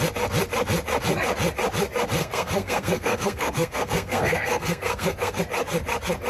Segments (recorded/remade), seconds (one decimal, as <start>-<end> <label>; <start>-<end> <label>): 0.0-2.2 recorded; 2.2-5.4 remade; 5.4-6.3 recorded